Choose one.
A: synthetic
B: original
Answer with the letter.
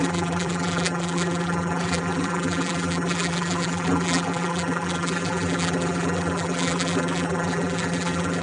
A